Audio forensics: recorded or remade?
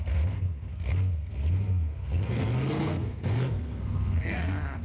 remade